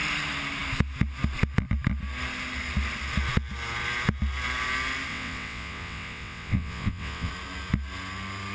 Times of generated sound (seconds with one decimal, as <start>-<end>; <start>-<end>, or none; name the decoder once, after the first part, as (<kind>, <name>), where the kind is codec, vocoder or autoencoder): 5.1-7.3 (vocoder, WaveNeXt)